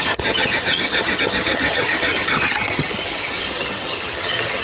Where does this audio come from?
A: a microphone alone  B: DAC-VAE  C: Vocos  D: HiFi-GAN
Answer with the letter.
D